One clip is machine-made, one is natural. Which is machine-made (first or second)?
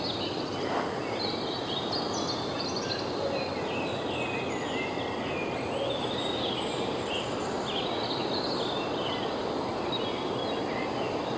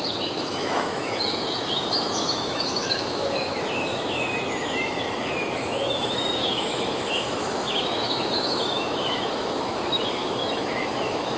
second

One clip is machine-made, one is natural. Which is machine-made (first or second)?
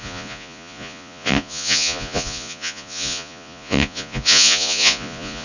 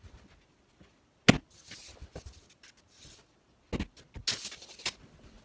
first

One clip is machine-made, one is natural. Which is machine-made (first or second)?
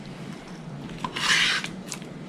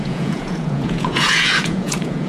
second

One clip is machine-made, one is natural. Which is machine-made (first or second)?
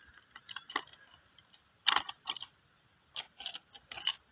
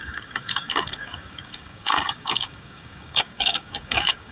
second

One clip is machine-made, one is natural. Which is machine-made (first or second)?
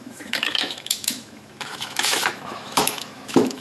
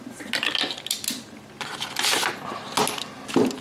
first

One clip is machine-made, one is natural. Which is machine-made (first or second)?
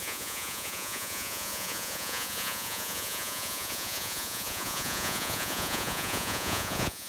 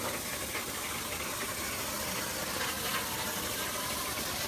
first